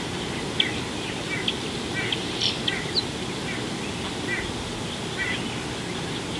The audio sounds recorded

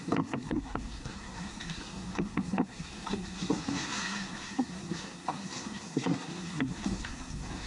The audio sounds remade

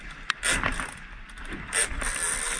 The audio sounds recorded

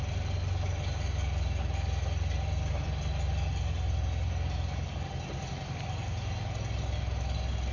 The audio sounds recorded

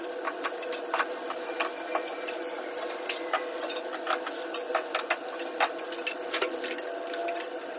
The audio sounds recorded